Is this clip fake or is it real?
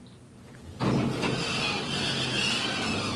real